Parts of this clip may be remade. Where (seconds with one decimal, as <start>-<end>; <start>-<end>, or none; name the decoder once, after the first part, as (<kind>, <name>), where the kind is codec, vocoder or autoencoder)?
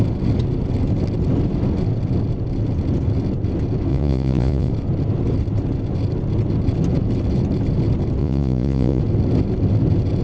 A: 3.9-4.7 (vocoder, Vocos); 8.2-9.0